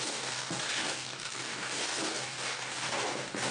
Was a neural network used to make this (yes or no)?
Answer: yes